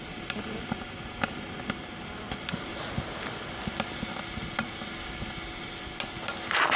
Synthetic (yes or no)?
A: no